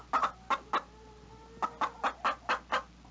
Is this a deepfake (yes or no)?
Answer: no